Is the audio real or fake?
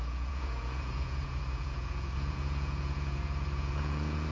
fake